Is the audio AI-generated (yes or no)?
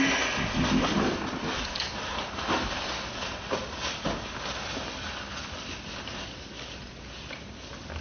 no